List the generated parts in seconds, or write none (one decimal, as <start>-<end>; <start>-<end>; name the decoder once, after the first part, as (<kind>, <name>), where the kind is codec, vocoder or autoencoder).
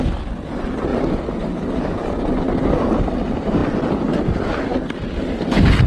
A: none